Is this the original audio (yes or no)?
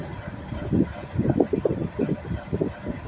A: yes